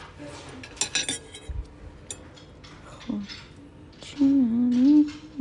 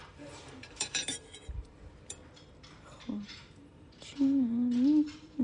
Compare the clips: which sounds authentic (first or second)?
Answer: first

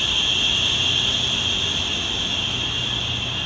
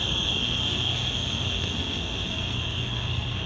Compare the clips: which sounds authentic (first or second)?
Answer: first